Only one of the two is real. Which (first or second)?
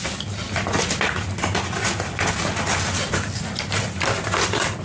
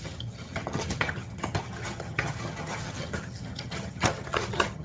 first